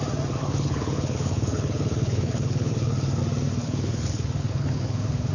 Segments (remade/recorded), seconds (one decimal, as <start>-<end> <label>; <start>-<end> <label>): 0.0-0.4 recorded; 0.4-3.2 remade; 3.2-3.6 recorded; 3.6-5.3 remade